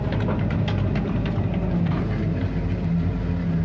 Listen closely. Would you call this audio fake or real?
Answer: real